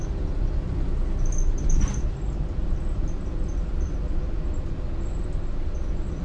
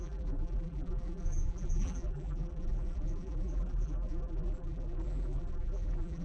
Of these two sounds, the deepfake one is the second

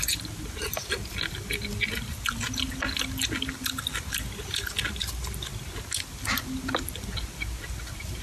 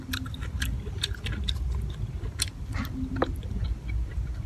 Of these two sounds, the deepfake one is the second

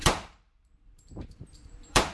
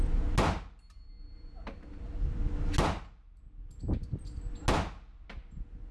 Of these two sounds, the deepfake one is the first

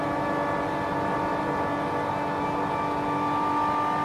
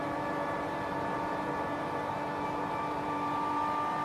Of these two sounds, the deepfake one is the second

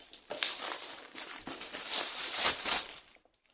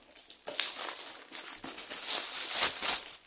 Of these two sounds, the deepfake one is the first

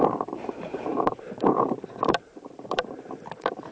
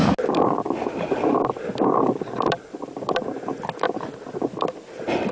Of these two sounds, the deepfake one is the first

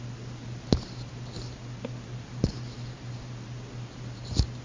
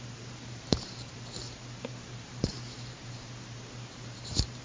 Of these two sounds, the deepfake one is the second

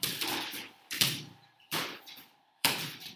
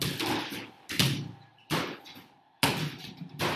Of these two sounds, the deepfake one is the first